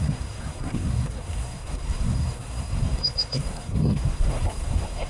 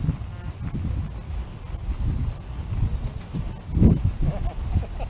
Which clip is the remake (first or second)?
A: first